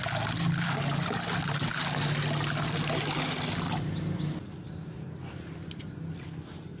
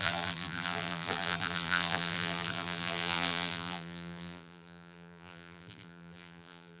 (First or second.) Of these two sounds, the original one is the first